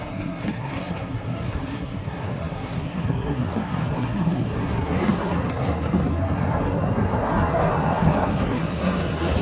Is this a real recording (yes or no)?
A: no